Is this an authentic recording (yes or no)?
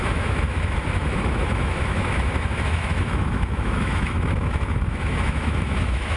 no